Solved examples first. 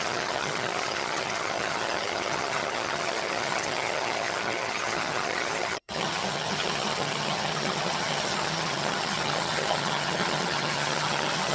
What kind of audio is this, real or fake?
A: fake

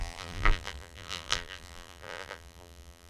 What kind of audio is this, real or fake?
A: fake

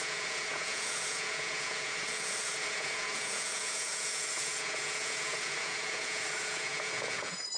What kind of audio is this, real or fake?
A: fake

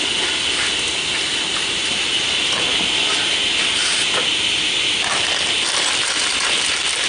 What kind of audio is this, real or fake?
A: real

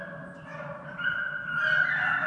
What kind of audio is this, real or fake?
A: real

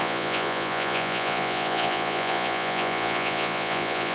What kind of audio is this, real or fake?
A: fake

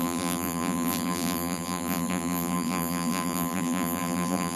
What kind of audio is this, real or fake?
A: fake